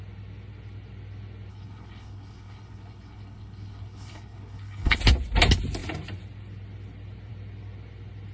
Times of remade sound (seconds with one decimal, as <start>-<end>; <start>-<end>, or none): 1.5-5.0